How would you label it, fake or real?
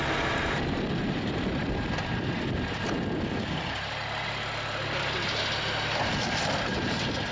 real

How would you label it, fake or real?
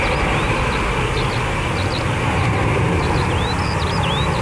real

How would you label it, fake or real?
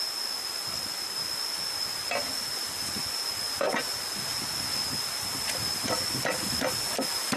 real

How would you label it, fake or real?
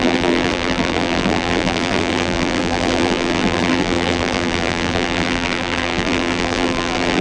fake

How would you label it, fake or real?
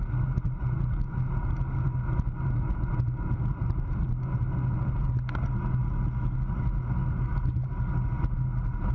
real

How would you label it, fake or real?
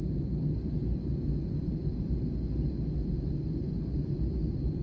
real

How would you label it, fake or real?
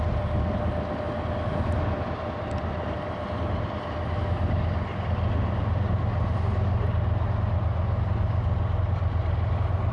real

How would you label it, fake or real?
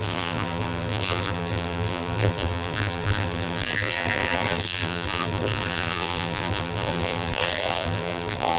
fake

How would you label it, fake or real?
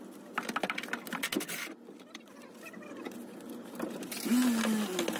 real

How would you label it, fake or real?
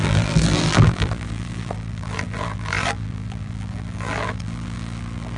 fake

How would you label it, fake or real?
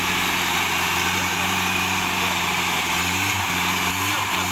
fake